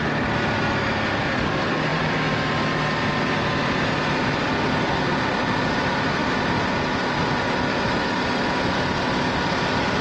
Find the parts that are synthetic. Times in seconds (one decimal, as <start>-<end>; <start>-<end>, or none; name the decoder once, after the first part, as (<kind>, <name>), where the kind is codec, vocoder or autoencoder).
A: none